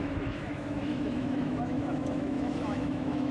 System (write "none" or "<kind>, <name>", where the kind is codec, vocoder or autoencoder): autoencoder, DAC-VAE